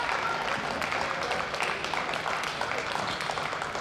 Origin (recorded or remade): recorded